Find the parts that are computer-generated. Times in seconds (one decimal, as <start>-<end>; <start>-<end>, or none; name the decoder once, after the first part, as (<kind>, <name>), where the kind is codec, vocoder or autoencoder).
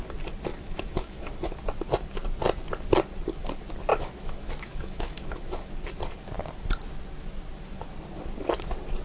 0.5-1.3 (autoencoder, DAC-VAE); 3.9-5.7